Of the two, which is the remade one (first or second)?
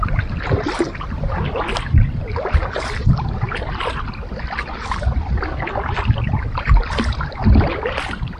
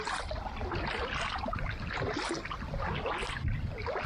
first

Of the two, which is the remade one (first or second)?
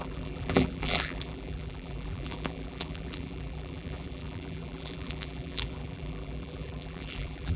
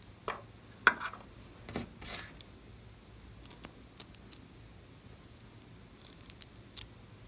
first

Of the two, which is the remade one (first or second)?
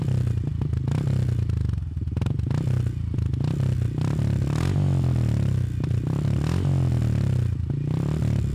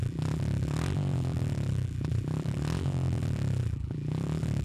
second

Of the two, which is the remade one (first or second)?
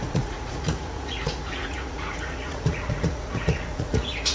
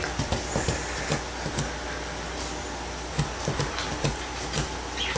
first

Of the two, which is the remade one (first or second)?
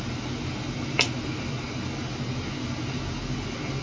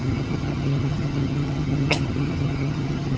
second